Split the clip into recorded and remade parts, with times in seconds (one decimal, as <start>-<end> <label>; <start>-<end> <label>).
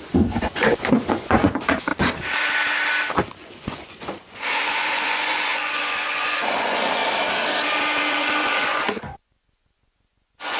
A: 0.0-1.9 remade; 1.9-3.4 recorded; 3.4-7.0 remade; 7.0-8.1 recorded; 8.1-10.6 remade